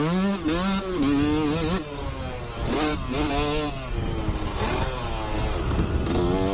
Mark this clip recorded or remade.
recorded